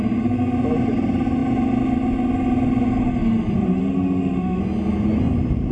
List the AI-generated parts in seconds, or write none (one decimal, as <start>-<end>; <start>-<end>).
3.8-4.6